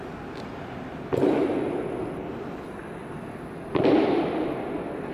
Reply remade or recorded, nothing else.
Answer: recorded